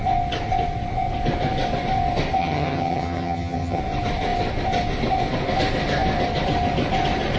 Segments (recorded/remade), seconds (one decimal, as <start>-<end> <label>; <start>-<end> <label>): 0.0-2.4 recorded; 2.4-3.8 remade; 3.8-7.4 recorded